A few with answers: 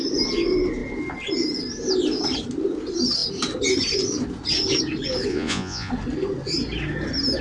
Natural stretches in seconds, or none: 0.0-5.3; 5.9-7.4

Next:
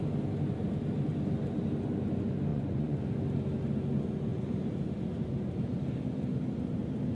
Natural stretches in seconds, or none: 0.0-2.5; 3.0-7.1

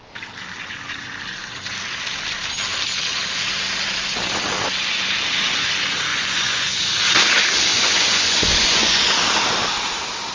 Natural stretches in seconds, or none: 0.0-6.1; 6.8-7.7; 9.0-10.3

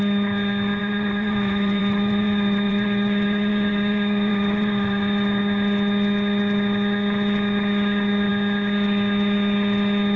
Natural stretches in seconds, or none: 0.0-0.8; 5.4-10.2

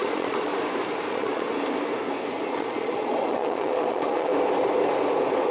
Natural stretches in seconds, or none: 0.5-1.1; 1.5-2.5; 4.3-5.5

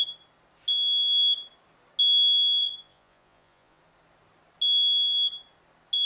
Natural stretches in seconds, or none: 0.0-2.6; 3.8-6.0